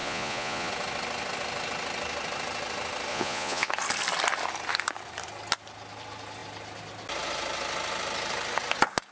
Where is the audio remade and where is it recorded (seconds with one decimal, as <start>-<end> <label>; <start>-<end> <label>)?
0.0-0.7 remade; 0.7-3.1 recorded; 3.1-3.7 remade; 3.7-9.1 recorded